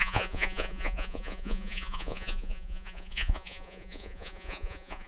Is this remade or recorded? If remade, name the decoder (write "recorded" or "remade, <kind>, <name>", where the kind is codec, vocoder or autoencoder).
remade, vocoder, Vocos